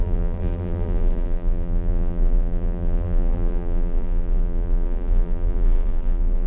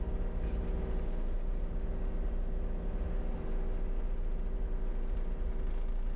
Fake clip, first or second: first